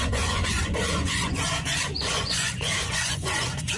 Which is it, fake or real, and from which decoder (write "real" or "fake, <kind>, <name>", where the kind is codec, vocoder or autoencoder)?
fake, vocoder, Vocos